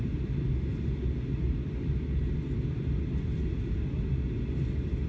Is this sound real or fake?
real